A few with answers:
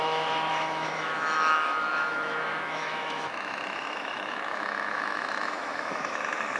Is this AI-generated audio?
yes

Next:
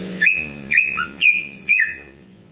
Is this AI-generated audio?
yes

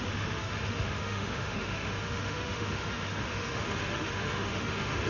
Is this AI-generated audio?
yes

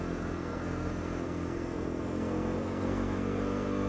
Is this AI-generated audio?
yes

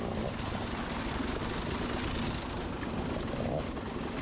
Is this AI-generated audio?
no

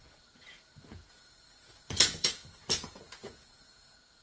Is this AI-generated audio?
yes